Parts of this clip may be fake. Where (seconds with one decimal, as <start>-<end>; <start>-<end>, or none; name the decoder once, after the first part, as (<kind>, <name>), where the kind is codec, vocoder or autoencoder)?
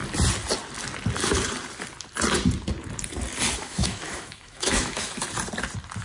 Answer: 3.6-5.2 (autoencoder, DAC-VAE)